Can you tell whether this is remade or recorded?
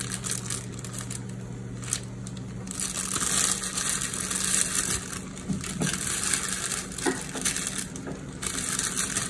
recorded